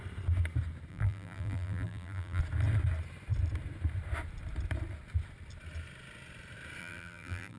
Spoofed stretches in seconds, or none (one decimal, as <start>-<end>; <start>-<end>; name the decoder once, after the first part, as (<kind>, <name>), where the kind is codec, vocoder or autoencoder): 0.9-2.4 (vocoder, BigVGAN v2); 6.8-7.6